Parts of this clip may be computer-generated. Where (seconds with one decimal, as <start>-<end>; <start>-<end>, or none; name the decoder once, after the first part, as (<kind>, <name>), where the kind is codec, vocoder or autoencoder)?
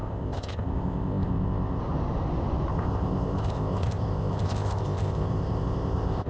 0.0-1.8 (codec, ZipCodec); 2.7-6.3